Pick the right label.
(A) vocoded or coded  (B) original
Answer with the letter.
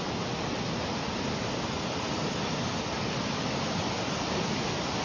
B